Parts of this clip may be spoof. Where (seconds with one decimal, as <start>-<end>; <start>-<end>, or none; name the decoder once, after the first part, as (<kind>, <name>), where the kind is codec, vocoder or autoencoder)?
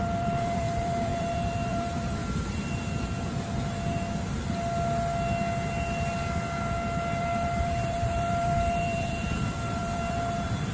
0.0-2.2 (vocoder, BigVGAN v2); 7.2-10.7